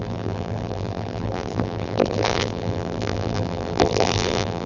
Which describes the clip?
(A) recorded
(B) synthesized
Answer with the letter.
B